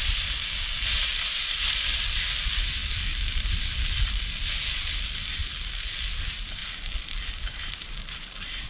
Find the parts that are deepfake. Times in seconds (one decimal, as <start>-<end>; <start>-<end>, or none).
1.1-2.4; 2.8-4.4; 6.6-8.7